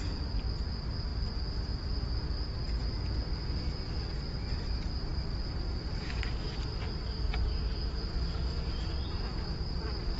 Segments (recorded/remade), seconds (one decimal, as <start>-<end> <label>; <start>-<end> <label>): 0.0-10.2 recorded